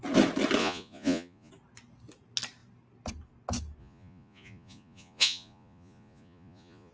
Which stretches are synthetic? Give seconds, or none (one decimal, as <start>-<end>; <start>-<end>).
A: 0.6-1.5; 3.8-6.9